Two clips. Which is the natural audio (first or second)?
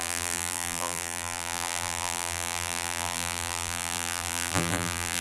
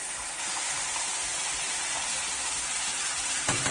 second